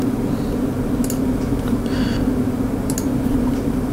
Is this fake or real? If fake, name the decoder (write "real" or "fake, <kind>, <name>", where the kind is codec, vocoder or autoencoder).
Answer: real